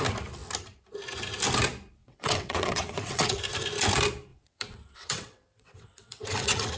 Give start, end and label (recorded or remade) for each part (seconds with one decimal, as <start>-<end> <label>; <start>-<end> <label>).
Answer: 0.0-2.0 recorded; 2.0-3.4 remade; 3.4-4.3 recorded; 4.3-6.8 remade